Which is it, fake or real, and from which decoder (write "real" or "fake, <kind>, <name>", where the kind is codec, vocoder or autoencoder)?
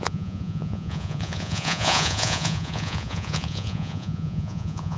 fake, vocoder, Vocos